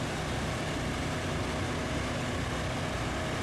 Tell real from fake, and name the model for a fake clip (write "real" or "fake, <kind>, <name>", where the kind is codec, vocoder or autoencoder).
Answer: real